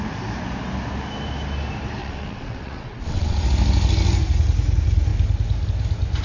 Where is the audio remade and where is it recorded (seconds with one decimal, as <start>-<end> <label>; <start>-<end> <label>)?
0.0-2.0 recorded; 2.0-3.4 remade; 3.4-6.2 recorded